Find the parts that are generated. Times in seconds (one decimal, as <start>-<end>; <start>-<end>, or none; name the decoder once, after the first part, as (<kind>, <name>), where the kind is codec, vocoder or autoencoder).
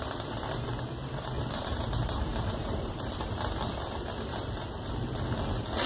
1.0-3.7 (vocoder, BigVGAN v2); 4.3-4.9